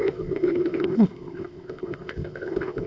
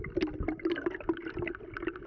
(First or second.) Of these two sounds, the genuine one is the second